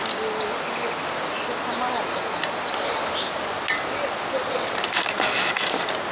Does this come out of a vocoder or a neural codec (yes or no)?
no